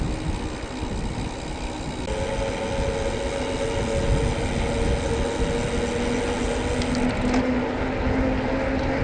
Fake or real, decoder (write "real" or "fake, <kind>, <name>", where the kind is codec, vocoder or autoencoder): real